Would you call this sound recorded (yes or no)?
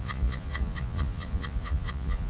no